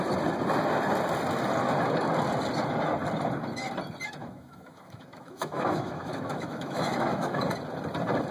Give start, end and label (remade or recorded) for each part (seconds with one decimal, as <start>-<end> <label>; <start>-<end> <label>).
0.0-4.2 recorded; 4.2-7.4 remade; 7.4-8.3 recorded